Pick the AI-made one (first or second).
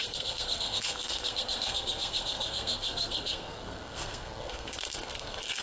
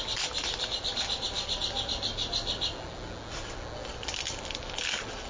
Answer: first